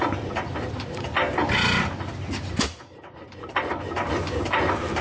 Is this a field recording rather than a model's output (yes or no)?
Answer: yes